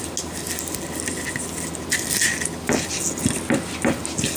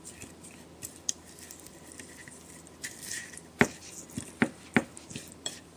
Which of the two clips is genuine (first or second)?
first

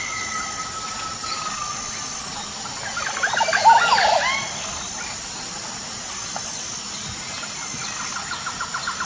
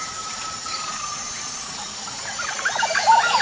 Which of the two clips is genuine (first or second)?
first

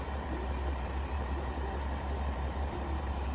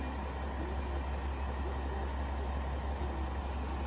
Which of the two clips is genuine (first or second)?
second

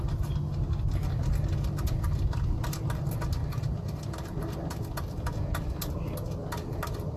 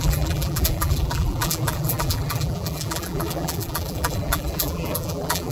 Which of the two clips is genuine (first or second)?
first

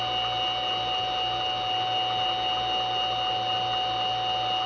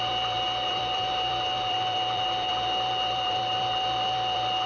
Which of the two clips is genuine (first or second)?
first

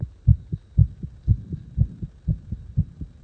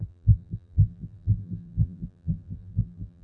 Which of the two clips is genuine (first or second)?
first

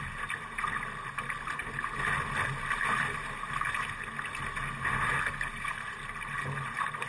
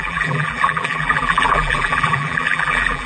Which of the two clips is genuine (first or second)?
first